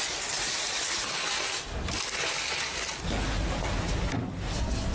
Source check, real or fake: real